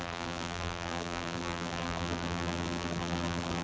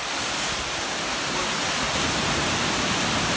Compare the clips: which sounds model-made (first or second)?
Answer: first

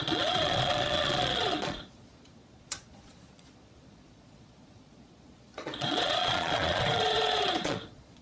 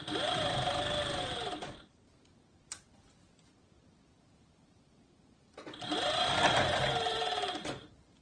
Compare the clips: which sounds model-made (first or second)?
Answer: first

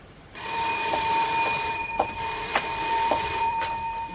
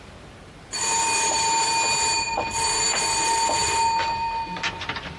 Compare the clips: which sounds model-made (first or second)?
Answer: first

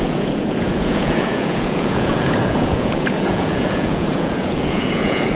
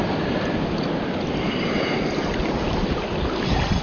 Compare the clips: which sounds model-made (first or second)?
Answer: first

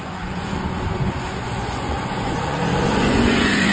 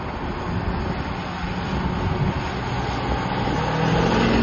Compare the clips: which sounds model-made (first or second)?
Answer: first